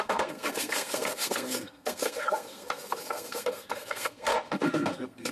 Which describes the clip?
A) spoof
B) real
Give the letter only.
A